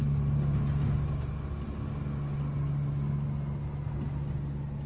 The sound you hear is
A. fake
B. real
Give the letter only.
B